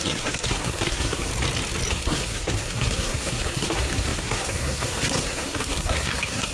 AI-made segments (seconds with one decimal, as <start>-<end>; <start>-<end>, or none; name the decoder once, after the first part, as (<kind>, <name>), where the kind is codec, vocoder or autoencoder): 0.0-1.3 (codec, SNAC); 1.9-6.5